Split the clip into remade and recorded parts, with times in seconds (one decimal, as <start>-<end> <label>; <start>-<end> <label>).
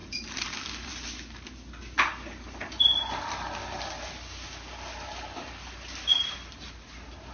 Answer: 0.0-0.9 remade; 0.9-7.3 recorded